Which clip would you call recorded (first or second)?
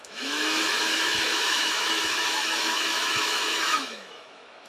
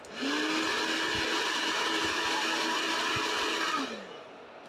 second